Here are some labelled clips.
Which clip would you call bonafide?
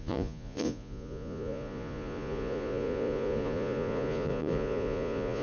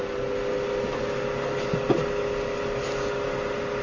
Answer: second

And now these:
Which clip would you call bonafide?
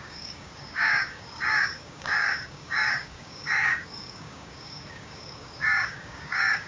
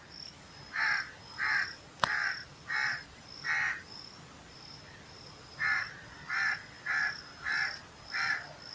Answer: second